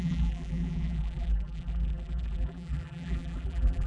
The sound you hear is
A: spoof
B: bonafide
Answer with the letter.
A